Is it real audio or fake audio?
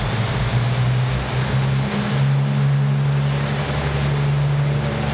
real